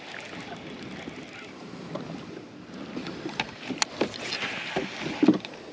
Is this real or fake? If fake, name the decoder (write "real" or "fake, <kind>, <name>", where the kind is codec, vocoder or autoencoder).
real